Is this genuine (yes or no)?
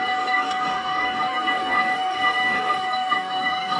no